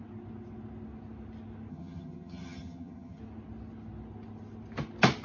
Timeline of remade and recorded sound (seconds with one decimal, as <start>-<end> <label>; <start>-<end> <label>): 0.0-1.7 recorded; 1.7-3.2 remade; 3.2-5.2 recorded